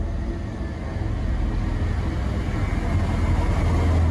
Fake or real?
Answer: real